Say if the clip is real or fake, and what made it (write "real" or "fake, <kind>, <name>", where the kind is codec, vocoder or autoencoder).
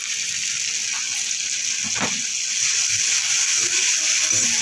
real